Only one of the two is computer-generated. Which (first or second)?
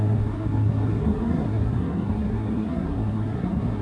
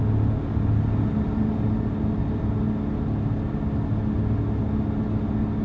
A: first